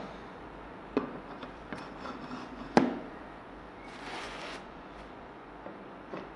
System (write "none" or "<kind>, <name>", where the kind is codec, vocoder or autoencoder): vocoder, Vocos